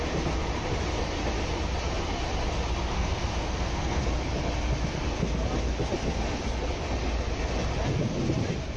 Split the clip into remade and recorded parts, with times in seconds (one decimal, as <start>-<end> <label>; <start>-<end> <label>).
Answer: 0.0-2.9 recorded; 2.9-4.0 remade; 4.0-8.8 recorded